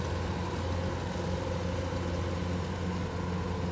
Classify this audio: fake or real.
real